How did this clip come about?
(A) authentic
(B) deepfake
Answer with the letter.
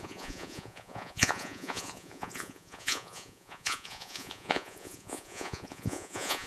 B